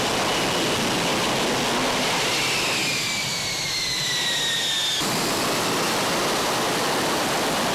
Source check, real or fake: real